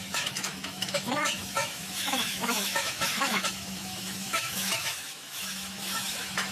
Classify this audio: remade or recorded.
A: remade